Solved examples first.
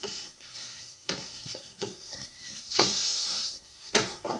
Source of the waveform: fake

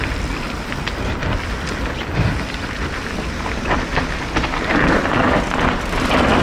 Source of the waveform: real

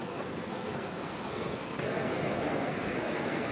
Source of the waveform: fake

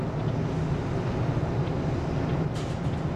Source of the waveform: real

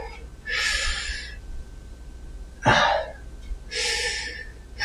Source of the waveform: real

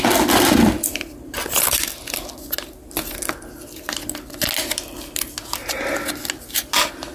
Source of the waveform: real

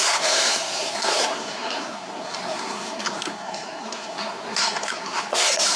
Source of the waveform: fake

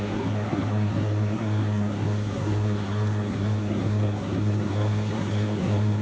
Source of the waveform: fake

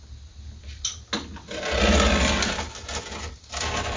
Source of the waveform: real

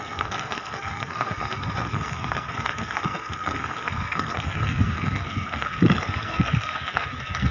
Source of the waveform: fake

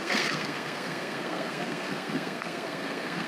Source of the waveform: fake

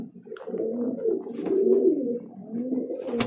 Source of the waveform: real